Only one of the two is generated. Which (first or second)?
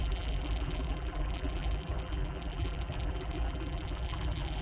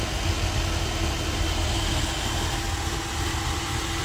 first